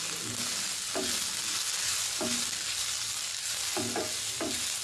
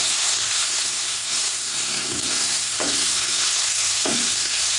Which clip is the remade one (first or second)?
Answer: second